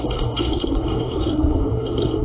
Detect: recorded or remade remade